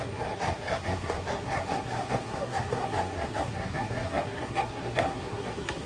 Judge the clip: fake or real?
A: fake